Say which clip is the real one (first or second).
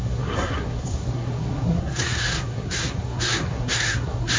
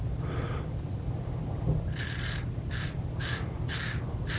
second